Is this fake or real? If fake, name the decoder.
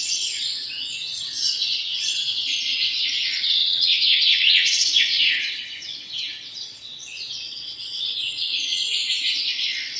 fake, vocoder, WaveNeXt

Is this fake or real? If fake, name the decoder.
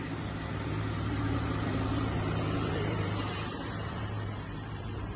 fake, vocoder, BigVGAN v2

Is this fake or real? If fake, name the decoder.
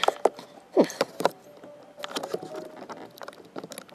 real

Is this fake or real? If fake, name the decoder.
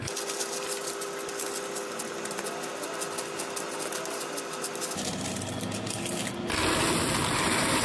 real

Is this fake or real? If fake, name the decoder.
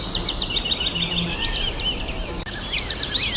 real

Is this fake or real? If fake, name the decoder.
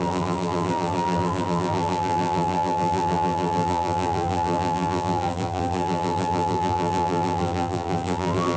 fake, vocoder, BigVGAN v2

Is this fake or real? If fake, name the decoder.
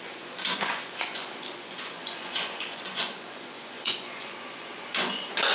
fake, vocoder, Vocos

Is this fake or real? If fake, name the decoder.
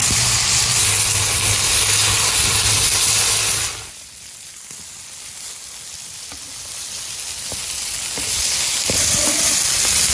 real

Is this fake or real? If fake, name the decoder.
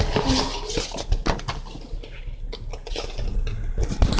real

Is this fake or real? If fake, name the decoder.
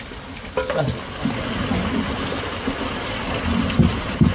real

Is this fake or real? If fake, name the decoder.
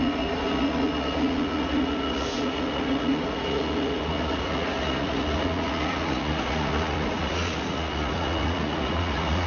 fake, vocoder, Vocos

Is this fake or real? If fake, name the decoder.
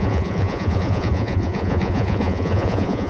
fake, vocoder, Vocos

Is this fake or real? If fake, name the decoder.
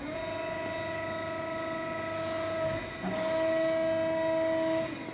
real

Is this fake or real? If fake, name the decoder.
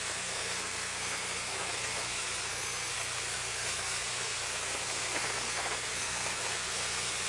fake, codec, SNAC